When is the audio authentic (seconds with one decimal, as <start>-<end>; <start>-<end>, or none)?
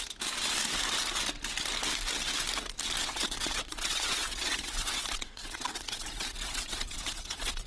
0.0-3.0